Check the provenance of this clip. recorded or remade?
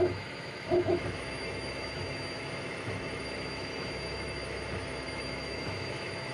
remade